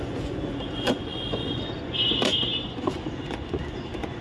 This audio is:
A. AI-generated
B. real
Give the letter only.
A